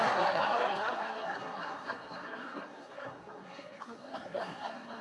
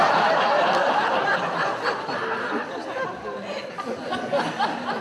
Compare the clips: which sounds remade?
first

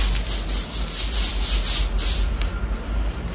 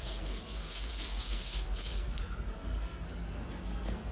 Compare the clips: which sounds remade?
second